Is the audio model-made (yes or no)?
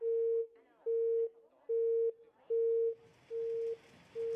no